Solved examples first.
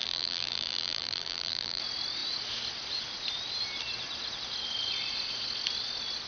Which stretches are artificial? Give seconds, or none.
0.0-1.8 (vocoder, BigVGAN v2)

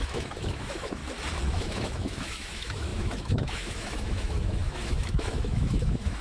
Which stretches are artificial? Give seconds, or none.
0.0-1.0 (autoencoder, DAC-VAE); 1.5-6.2

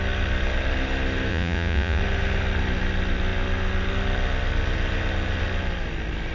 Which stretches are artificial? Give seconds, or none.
1.3-2.0 (vocoder, Vocos)